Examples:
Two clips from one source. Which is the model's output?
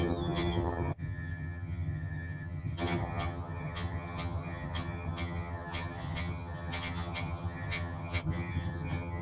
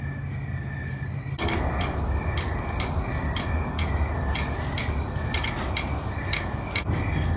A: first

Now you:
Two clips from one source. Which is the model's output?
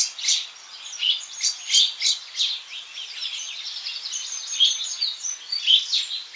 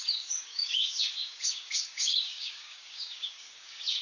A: second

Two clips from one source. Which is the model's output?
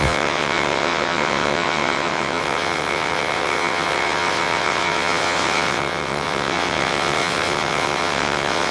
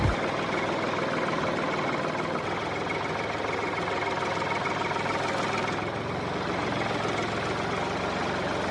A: first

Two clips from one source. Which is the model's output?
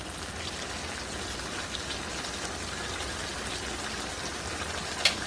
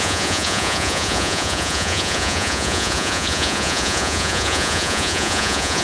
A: second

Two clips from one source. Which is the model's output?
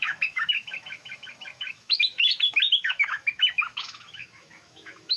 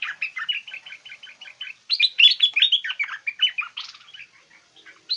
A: first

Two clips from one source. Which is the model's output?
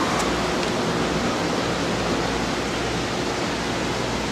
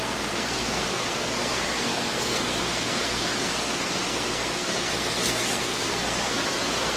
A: second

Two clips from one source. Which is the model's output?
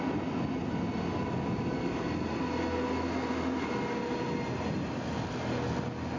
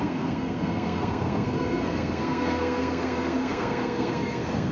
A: second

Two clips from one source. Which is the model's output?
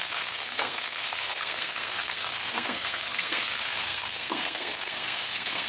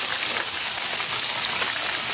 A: first